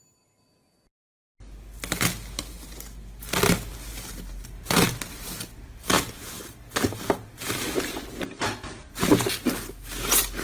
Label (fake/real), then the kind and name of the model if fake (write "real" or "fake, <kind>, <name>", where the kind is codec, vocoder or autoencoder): real